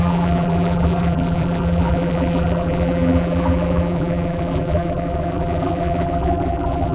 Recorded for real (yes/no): no